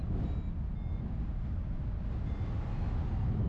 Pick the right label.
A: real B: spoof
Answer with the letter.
A